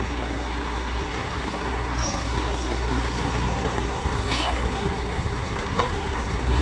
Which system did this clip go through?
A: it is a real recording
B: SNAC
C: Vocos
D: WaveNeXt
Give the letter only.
B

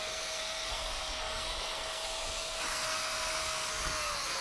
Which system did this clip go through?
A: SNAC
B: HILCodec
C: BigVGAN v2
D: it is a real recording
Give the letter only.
A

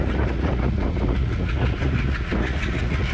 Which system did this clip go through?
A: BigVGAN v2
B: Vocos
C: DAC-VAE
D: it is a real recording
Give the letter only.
B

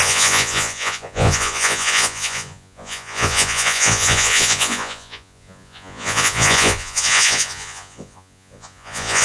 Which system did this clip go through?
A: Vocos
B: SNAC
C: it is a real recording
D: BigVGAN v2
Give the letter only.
A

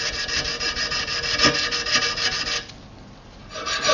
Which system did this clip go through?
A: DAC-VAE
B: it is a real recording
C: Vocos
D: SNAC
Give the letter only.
B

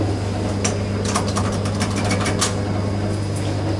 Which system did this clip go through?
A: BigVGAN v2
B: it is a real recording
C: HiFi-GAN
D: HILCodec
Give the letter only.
B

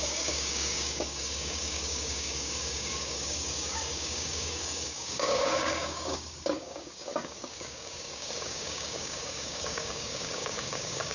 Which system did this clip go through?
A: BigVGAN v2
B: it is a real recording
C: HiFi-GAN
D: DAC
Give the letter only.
D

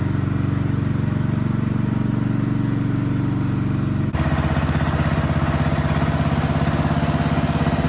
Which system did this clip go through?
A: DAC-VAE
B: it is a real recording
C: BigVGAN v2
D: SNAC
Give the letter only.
B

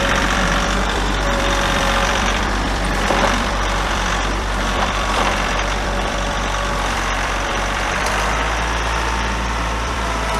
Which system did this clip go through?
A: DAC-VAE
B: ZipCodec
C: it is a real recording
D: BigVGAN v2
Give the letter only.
D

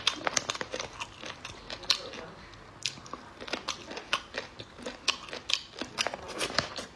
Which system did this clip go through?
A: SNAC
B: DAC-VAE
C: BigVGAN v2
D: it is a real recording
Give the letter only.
D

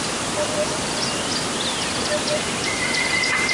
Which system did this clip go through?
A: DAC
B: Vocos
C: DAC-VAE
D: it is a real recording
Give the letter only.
D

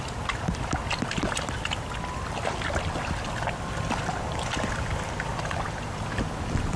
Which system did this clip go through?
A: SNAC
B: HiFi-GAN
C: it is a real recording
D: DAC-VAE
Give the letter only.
C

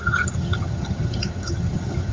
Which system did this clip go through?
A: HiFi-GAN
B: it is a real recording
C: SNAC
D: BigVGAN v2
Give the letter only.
A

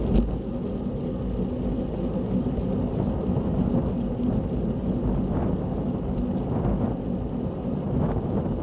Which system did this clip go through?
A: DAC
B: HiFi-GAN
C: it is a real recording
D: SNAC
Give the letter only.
C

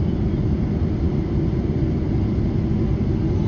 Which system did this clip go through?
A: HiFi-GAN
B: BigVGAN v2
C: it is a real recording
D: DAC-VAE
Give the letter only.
C